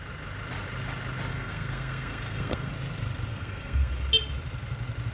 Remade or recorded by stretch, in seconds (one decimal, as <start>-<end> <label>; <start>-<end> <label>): 0.0-1.3 recorded; 1.3-2.7 remade; 2.7-3.3 recorded; 3.3-3.9 remade; 3.9-5.1 recorded